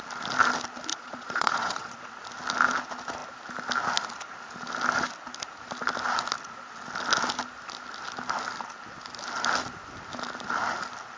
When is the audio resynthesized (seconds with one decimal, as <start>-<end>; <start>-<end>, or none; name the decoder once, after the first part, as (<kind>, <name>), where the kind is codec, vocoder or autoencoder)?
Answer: 0.9-2.0 (vocoder, Vocos)